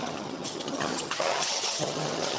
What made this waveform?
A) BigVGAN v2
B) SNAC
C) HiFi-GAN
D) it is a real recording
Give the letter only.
C